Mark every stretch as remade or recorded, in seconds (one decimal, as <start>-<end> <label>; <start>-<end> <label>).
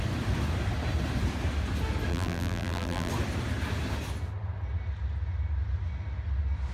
0.0-2.1 recorded; 2.1-3.1 remade; 3.1-6.7 recorded